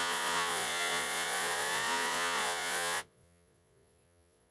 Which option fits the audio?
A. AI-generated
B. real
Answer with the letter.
A